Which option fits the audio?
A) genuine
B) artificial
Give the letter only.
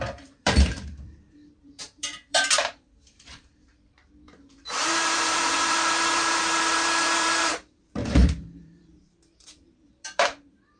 B